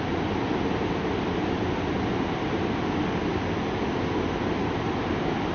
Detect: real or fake real